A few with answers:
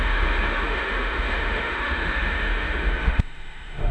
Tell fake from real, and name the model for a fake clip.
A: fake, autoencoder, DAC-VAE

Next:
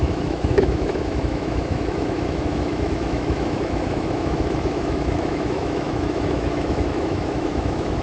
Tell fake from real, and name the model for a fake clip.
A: fake, autoencoder, DAC-VAE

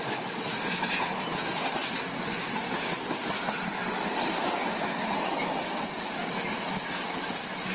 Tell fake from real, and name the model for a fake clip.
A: real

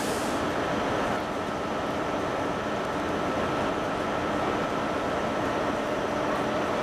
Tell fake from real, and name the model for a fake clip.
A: real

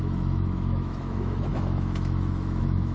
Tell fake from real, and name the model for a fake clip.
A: fake, autoencoder, DAC-VAE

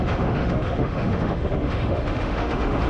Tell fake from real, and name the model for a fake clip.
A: fake, autoencoder, DAC-VAE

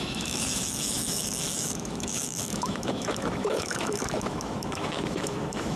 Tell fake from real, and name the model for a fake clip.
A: fake, autoencoder, DAC-VAE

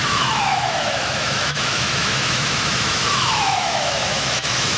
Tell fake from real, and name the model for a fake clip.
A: fake, autoencoder, DAC-VAE